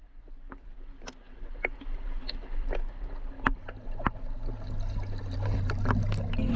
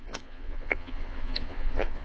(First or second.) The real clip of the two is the first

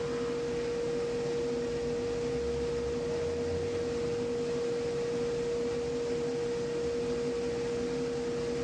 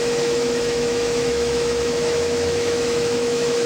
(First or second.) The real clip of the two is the first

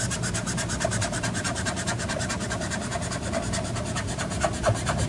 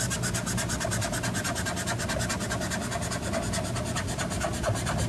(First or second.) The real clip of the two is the second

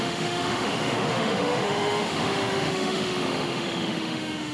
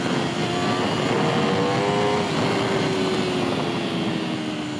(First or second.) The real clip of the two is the second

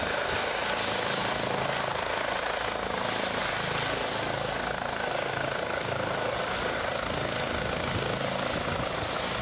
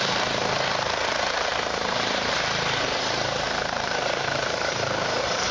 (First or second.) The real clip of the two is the first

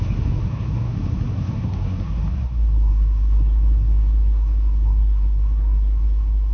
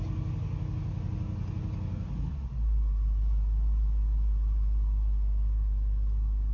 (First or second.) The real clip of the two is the second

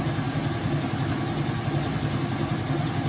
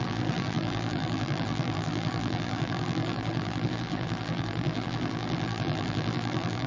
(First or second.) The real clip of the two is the first